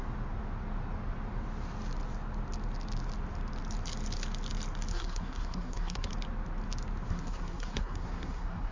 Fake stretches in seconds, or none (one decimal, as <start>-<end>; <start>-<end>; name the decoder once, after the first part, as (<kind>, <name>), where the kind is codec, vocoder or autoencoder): 4.9-6.1 (codec, SNAC); 7.1-8.7